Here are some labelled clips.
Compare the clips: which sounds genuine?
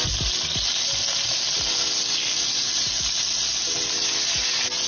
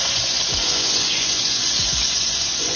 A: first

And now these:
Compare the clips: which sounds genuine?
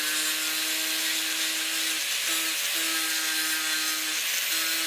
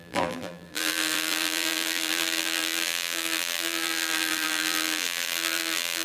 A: first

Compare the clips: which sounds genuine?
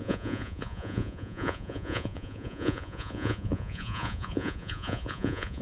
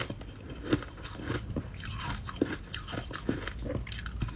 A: second